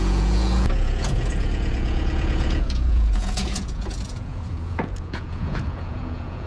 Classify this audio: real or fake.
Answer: fake